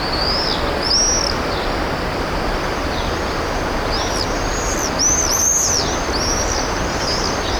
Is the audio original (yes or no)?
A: yes